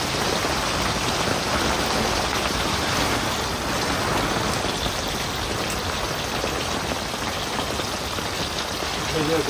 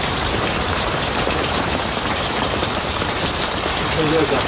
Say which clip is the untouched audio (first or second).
first